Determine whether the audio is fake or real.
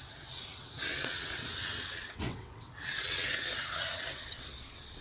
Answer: fake